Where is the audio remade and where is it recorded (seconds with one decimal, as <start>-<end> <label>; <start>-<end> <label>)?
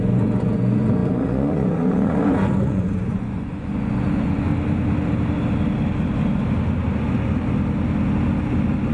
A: 0.0-4.5 remade; 4.5-8.9 recorded